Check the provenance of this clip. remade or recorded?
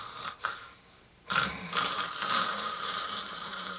remade